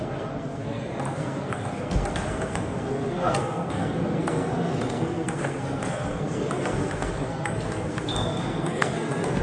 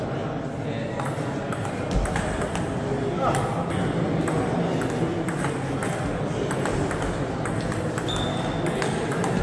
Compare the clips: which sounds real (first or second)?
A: second